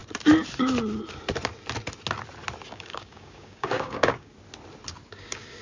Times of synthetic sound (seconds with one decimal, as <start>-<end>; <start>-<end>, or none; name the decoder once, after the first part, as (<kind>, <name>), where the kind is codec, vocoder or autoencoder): 2.7-4.3 (codec, DAC); 5.1-5.6